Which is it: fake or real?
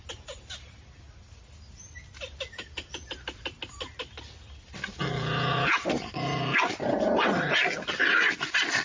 real